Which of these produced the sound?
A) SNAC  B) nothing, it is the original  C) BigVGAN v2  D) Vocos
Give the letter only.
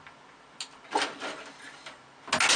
B